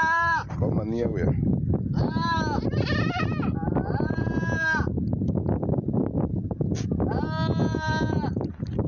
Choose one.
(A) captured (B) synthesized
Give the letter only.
A